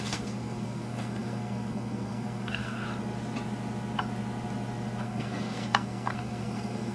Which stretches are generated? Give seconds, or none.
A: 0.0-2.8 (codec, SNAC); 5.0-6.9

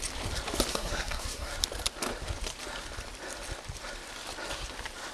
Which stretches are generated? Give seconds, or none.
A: 0.7-1.5 (codec, SNAC)